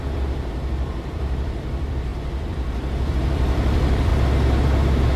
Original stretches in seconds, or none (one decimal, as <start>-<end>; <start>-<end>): 4.1-5.2